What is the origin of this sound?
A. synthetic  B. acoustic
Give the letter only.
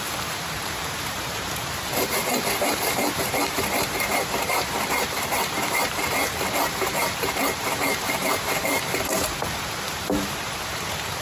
A